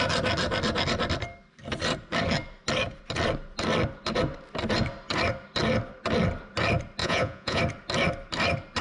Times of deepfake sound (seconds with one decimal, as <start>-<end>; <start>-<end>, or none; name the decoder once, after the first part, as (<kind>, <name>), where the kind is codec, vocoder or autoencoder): 7.0-7.6 (vocoder, Vocos)